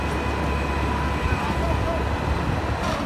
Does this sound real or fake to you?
real